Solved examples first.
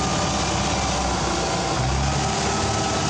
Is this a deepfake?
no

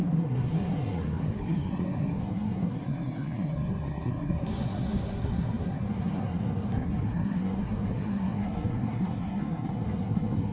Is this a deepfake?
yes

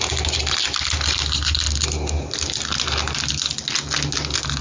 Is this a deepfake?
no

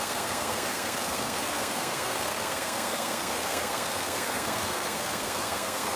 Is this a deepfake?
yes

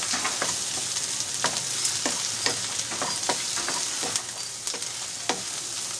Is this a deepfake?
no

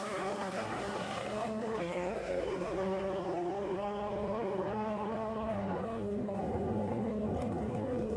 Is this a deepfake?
yes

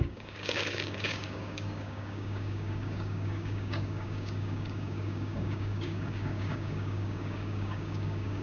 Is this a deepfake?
yes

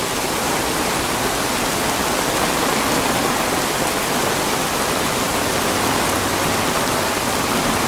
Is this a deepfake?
no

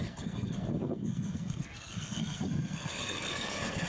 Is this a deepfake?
yes